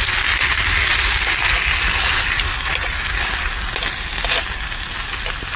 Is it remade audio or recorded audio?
recorded